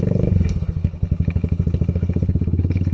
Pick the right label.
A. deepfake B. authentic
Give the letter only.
A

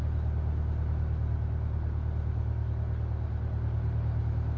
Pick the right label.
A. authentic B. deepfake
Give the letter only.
A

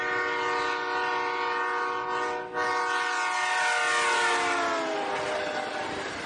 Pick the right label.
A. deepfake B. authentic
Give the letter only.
B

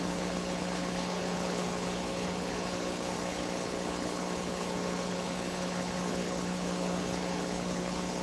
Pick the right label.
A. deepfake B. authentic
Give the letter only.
A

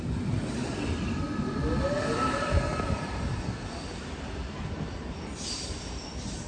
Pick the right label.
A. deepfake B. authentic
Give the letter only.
B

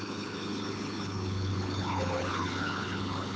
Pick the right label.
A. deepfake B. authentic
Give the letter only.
A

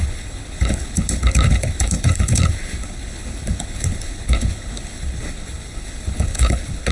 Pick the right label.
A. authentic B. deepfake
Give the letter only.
B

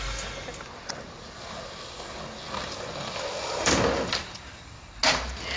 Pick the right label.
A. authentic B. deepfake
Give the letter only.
A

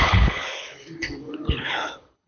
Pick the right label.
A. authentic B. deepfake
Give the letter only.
B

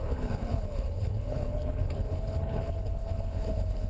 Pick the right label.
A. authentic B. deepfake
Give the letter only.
B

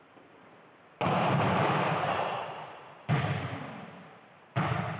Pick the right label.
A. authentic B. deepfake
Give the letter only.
A